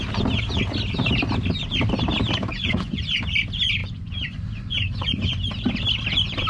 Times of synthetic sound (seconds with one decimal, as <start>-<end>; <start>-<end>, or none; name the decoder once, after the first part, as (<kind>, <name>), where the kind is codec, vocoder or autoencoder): 2.5-3.0 (vocoder, Vocos); 3.8-5.5